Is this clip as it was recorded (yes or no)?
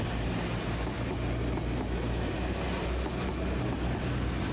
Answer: yes